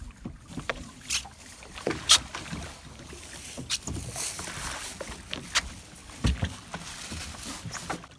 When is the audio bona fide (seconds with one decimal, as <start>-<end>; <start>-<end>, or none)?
0.0-8.2